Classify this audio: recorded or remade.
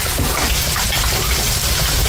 remade